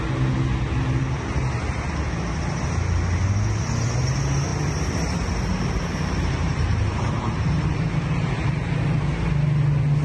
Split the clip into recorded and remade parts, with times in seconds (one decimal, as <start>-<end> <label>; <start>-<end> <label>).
0.0-4.5 recorded; 4.5-7.7 remade; 7.7-8.2 recorded; 8.2-8.7 remade; 8.7-10.0 recorded